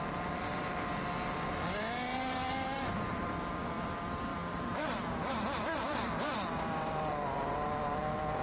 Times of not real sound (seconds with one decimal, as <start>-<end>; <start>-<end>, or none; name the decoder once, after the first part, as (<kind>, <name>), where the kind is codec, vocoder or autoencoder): 2.1-3.3 (vocoder, BigVGAN v2); 4.3-8.4